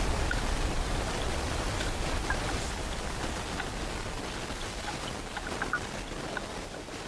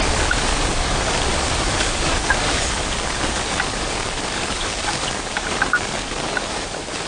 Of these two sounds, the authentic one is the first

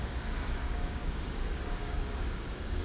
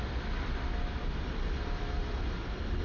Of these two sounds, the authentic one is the second